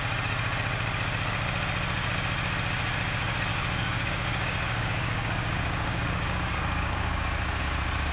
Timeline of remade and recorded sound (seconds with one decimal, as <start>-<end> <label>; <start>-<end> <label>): 0.0-3.5 recorded; 3.5-7.6 remade; 7.6-8.1 recorded